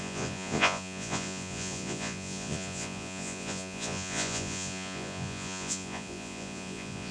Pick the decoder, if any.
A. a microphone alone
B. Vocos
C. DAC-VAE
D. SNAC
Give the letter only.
B